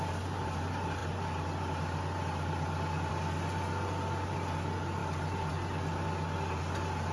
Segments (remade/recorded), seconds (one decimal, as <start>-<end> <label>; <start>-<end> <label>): 0.0-7.1 recorded

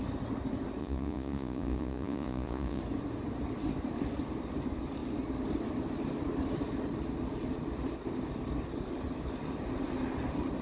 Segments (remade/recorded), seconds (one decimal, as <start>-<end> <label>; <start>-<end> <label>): 0.0-0.8 recorded; 0.8-2.8 remade; 2.8-10.6 recorded

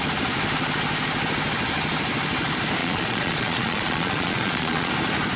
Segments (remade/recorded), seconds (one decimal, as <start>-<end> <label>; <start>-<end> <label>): 0.0-2.8 recorded; 2.8-4.9 remade; 4.9-5.4 recorded

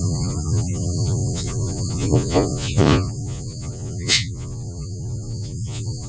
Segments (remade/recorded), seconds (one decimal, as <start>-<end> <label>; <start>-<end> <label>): 0.0-6.1 remade